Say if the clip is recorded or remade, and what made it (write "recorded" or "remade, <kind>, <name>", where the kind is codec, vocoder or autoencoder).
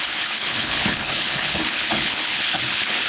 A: remade, codec, HILCodec